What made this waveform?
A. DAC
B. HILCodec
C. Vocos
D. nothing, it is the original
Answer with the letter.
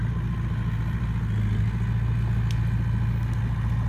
D